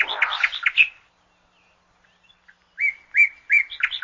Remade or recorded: recorded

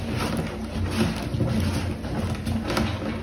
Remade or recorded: recorded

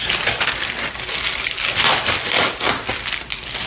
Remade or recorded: recorded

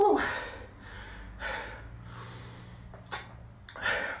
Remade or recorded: recorded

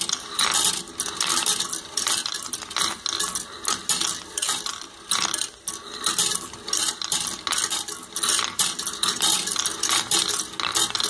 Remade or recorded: recorded